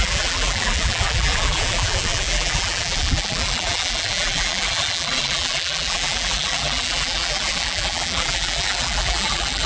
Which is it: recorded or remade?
remade